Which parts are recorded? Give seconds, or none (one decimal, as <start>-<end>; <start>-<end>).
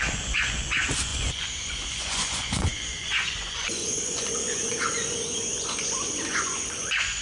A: none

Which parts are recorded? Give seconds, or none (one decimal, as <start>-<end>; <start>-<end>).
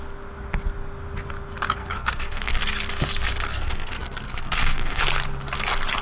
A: 0.0-1.8; 2.6-3.5; 5.0-6.0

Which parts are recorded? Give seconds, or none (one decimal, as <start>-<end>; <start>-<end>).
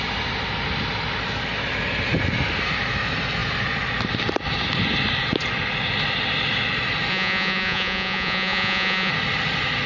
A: 0.0-7.1; 9.1-9.9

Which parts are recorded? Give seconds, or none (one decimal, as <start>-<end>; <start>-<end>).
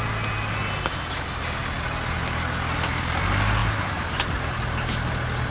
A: 0.0-3.6; 4.6-5.5